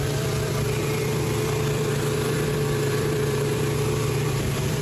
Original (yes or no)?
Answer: no